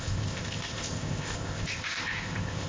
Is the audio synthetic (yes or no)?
yes